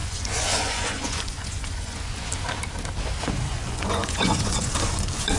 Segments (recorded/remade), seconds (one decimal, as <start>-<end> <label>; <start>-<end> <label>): 0.0-2.3 remade; 2.3-3.5 recorded; 3.5-4.7 remade; 4.7-5.4 recorded